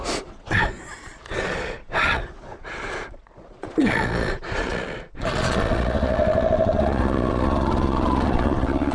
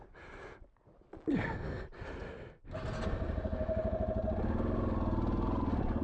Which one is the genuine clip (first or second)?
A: second